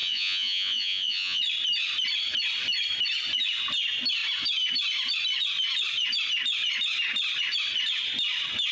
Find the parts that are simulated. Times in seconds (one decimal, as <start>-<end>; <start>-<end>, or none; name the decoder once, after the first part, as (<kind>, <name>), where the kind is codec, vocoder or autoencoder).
0.0-1.4 (vocoder, Vocos)